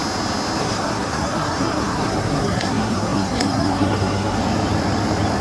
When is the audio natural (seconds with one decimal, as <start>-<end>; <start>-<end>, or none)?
0.0-0.6; 4.4-5.4